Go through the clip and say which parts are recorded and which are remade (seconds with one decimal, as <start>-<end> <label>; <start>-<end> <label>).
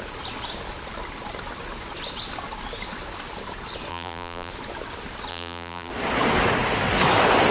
0.0-3.9 recorded; 3.9-4.5 remade; 4.5-5.3 recorded; 5.3-5.9 remade; 5.9-7.5 recorded